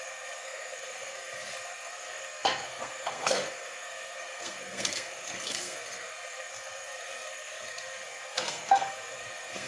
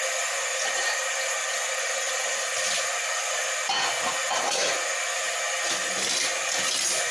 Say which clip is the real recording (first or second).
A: second